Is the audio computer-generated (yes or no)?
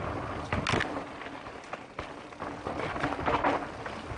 no